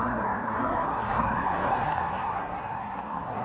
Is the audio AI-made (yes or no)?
yes